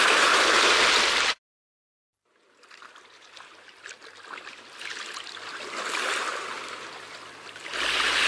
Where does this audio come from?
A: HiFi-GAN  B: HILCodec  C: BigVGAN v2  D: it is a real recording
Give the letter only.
D